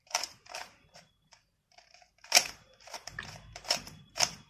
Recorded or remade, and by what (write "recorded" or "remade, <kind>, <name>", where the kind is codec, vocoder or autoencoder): remade, vocoder, BigVGAN v2